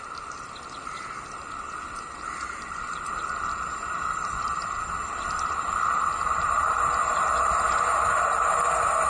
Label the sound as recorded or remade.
remade